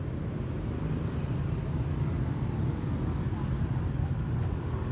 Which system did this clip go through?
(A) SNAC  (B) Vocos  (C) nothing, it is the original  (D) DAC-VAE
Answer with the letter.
C